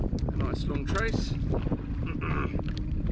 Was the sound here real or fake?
real